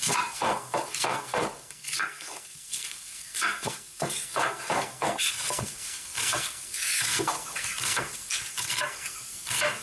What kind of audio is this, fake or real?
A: fake